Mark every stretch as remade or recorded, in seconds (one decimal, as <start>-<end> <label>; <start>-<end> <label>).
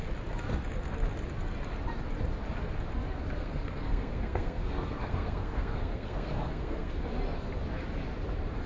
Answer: 0.0-3.4 recorded; 3.4-6.9 remade; 6.9-8.7 recorded